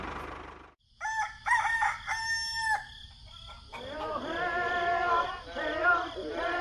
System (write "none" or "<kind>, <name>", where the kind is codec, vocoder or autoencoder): none